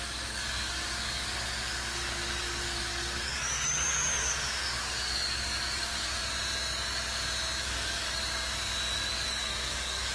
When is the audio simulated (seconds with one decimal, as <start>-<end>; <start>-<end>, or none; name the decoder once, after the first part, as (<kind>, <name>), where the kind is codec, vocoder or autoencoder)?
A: 0.0-6.2 (codec, DAC); 7.6-8.2; 8.9-10.1